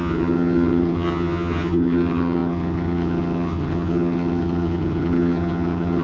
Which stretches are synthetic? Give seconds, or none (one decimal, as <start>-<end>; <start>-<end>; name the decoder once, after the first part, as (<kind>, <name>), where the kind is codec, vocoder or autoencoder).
0.0-6.0 (vocoder, HiFi-GAN)